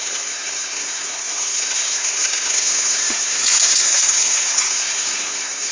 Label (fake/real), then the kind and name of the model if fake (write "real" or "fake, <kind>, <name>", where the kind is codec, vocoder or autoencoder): fake, codec, SNAC